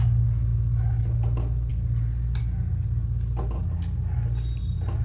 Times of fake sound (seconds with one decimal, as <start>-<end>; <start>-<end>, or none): none